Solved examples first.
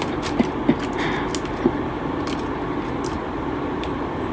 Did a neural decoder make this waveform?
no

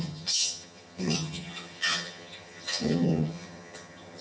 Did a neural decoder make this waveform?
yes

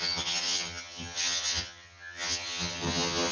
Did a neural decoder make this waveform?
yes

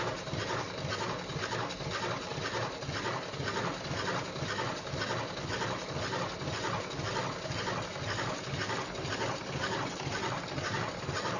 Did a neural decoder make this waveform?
no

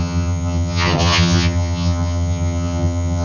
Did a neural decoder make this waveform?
yes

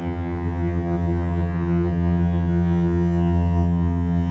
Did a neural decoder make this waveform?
yes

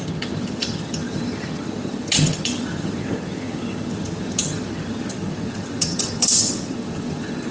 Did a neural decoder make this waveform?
yes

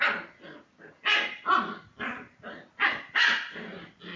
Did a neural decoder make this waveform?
no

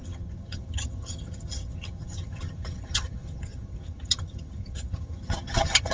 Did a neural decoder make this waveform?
yes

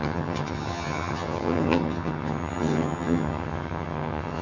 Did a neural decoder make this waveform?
yes